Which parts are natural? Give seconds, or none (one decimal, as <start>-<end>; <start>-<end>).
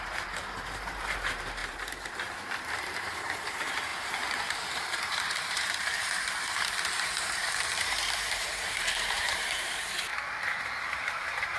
10.1-11.0